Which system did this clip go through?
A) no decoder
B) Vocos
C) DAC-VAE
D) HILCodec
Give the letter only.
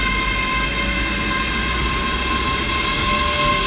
A